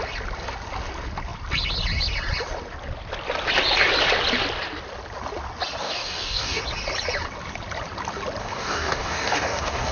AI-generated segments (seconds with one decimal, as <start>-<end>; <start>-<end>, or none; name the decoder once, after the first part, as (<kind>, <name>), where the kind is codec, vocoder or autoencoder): 5.8-6.6 (codec, DAC); 8.4-9.9

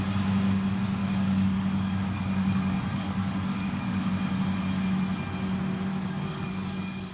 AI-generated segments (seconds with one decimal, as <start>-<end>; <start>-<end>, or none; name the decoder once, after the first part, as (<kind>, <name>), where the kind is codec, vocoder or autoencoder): 1.0-4.1 (codec, DAC); 5.9-7.1

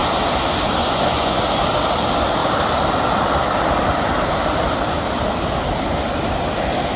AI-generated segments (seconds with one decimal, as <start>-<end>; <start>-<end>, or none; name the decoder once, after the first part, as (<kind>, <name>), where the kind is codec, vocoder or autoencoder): 0.8-1.4 (vocoder, Vocos)